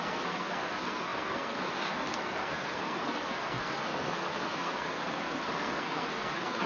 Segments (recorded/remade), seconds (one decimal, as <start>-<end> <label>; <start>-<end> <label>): 0.0-6.7 remade